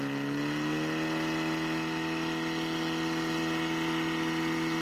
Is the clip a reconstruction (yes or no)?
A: no